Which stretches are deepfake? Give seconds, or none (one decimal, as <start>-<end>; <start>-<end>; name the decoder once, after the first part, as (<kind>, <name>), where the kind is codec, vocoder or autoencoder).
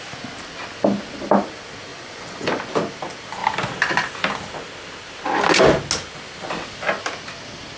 1.9-2.6 (vocoder, Vocos)